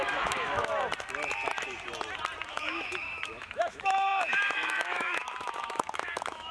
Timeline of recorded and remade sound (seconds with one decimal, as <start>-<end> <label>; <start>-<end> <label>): 0.0-0.7 remade; 0.7-2.5 recorded; 2.5-6.5 remade